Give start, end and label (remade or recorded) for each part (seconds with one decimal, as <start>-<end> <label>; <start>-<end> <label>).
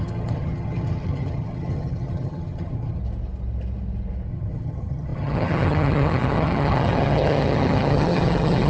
0.0-3.0 remade; 3.0-4.3 recorded; 4.3-8.7 remade